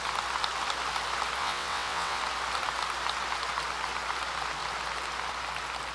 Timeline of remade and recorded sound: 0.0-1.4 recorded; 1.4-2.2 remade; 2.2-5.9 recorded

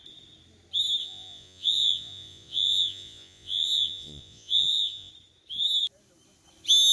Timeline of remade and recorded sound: 0.0-1.0 recorded; 1.0-5.1 remade; 5.1-6.9 recorded

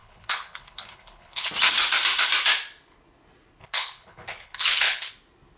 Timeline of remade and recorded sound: 0.0-1.5 remade; 1.5-3.6 recorded; 3.6-5.1 remade; 5.1-5.6 recorded

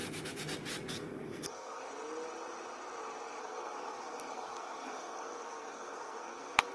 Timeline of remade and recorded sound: 0.0-0.9 recorded; 0.9-1.8 remade; 1.8-3.4 recorded; 3.4-6.7 remade

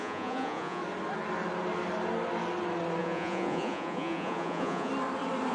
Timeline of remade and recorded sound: 0.0-0.8 remade; 0.8-3.0 recorded; 3.0-4.9 remade; 4.9-5.5 recorded

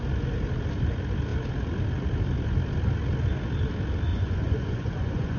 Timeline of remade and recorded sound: 0.0-4.1 recorded; 4.1-5.4 remade

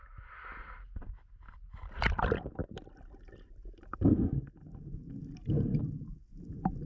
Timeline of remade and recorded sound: 0.0-6.9 recorded

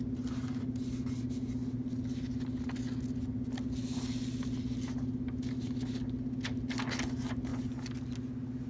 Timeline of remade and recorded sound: 0.0-8.7 recorded